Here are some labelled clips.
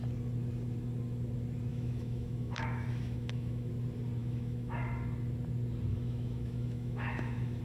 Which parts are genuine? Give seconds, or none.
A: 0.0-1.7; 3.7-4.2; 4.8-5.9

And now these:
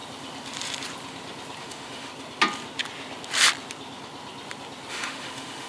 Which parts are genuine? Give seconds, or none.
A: 0.0-1.6; 2.1-4.9

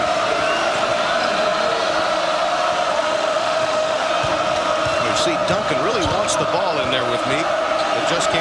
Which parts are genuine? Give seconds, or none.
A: 0.0-3.0; 4.1-8.4